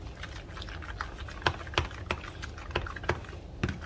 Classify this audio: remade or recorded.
recorded